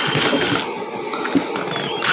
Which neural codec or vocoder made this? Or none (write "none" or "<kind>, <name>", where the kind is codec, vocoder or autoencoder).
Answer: none